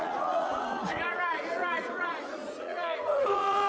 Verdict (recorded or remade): remade